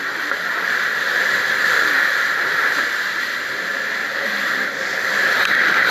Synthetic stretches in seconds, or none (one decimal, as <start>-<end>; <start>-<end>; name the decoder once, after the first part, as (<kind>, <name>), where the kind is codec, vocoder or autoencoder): 0.0-2.6 (vocoder, BigVGAN v2); 4.0-5.4